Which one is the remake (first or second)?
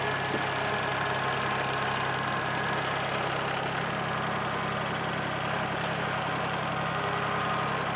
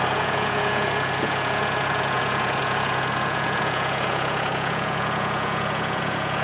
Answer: second